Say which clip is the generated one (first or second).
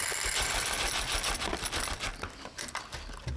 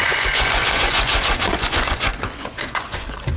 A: second